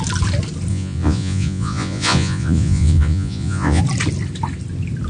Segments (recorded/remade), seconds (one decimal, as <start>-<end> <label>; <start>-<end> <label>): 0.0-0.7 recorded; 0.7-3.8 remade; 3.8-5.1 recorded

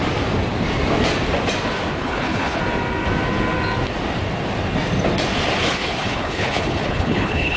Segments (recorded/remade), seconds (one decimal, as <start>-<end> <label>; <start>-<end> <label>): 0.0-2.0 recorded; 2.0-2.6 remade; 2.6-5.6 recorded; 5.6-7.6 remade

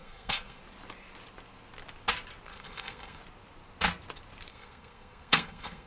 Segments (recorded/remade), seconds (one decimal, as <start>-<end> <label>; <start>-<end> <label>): 0.0-0.6 remade; 0.6-2.5 recorded; 2.5-3.2 remade; 3.2-4.5 recorded; 4.5-5.9 remade

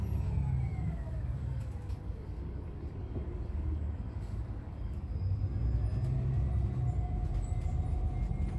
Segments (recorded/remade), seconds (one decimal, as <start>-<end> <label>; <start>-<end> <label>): 0.0-0.7 recorded; 0.7-5.4 remade; 5.4-8.6 recorded